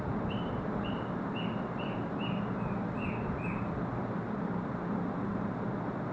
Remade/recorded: recorded